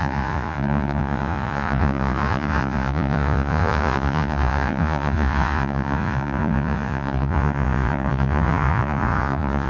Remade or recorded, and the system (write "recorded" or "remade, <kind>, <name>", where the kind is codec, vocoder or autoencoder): remade, vocoder, Vocos